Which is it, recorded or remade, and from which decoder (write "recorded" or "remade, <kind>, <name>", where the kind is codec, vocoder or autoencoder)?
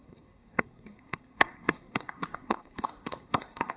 remade, codec, SNAC